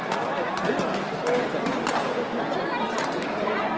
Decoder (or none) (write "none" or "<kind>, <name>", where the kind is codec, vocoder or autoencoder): none